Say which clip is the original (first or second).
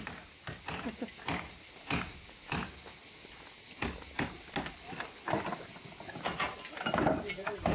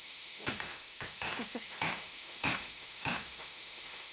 first